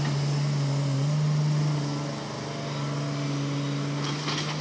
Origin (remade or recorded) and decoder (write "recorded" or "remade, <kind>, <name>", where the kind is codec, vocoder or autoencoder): recorded